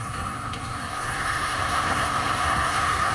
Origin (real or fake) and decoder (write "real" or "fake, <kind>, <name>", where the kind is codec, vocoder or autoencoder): fake, codec, SNAC